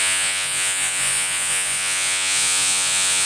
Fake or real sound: fake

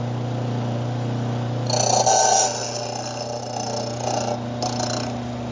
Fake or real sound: real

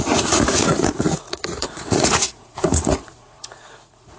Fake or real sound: fake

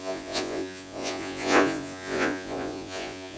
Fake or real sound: fake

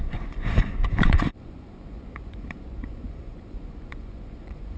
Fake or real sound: fake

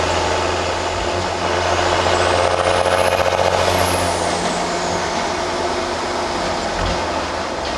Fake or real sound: real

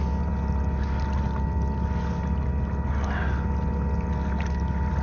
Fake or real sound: real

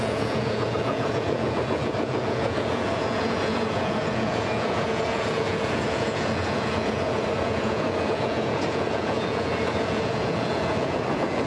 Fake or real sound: fake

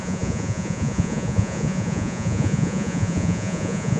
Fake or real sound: fake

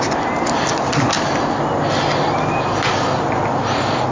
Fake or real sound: real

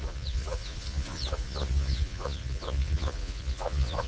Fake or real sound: fake